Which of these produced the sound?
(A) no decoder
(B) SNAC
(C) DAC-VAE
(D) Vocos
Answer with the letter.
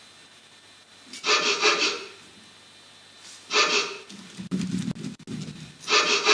A